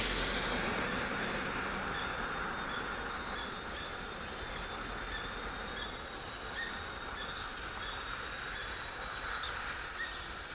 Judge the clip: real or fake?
real